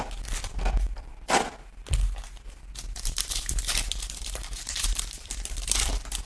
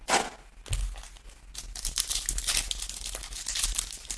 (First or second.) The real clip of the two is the second